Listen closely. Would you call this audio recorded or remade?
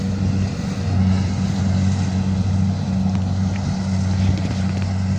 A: recorded